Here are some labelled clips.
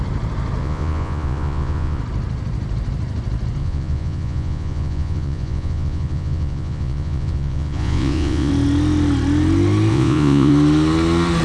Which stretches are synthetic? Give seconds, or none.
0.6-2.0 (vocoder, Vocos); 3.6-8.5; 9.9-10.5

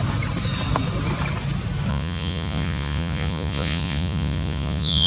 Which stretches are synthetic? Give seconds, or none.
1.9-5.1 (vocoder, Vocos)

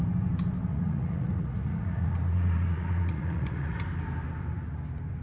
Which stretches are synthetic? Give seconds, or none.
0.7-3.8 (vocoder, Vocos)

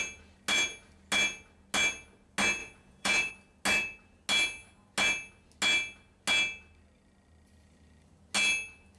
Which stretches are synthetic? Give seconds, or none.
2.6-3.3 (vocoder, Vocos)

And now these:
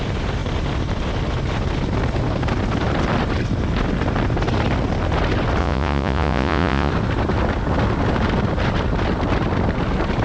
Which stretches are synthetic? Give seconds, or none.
5.6-6.9 (vocoder, Vocos)

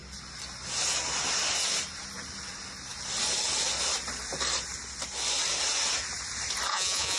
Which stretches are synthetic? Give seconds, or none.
6.7-7.2 (vocoder, Vocos)

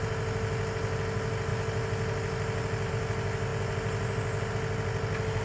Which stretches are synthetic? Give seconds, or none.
none